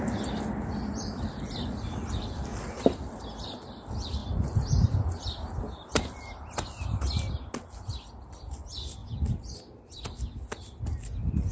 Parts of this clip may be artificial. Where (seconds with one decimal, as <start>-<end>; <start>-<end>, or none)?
none